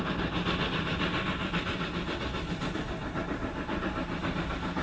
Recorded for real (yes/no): yes